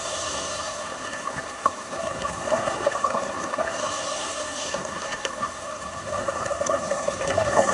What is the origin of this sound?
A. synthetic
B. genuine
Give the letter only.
A